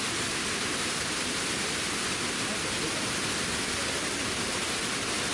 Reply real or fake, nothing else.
real